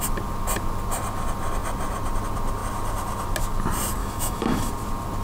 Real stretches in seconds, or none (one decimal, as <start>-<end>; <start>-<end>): 0.0-4.0; 4.7-5.2